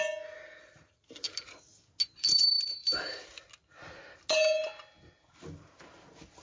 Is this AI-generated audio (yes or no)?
no